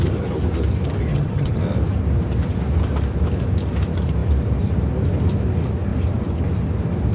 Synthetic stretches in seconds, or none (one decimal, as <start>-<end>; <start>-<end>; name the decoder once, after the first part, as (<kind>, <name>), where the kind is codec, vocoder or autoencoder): 1.1-1.6 (vocoder, HiFi-GAN)